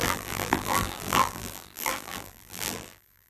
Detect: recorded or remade remade